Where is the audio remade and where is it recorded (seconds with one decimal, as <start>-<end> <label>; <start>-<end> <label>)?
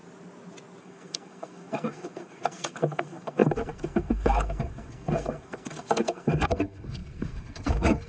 0.0-0.8 recorded; 0.8-8.1 remade